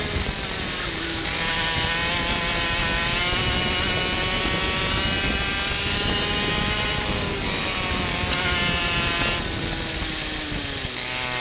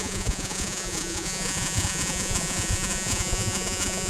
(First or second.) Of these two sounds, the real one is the first